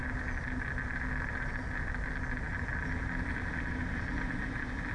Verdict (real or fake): real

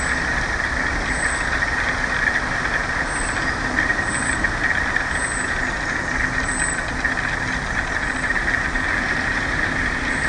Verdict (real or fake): real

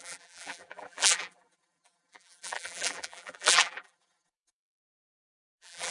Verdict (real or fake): fake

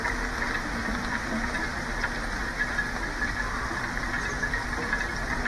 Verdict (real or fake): real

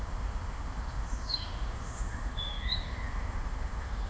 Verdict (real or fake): fake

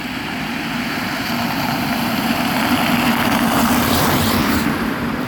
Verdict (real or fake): fake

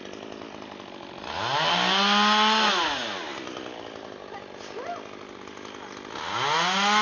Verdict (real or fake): real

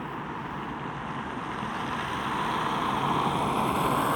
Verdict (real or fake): real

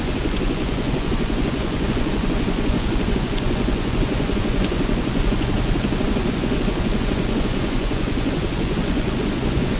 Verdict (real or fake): fake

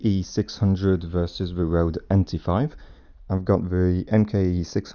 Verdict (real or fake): real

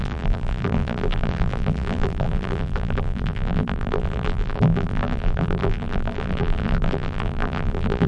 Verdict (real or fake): fake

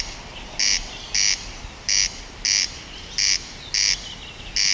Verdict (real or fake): real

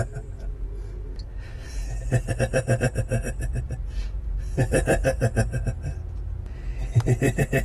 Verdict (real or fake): real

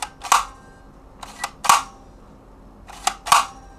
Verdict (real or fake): real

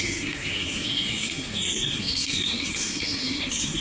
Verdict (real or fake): fake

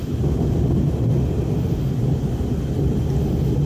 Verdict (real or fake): real